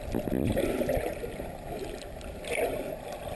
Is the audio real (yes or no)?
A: yes